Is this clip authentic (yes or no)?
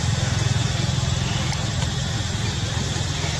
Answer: yes